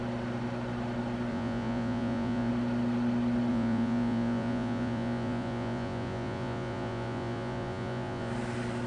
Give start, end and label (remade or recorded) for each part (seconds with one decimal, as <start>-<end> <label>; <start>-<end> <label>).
0.0-1.3 recorded; 1.3-2.5 remade; 2.5-3.5 recorded; 3.5-8.3 remade; 8.3-8.9 recorded